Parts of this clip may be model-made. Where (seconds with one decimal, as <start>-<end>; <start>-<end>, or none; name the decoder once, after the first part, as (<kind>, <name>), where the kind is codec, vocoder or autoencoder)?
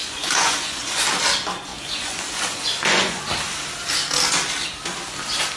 0.0-1.0 (vocoder, Vocos); 1.7-3.2